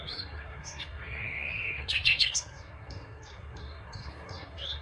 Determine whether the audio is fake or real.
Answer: fake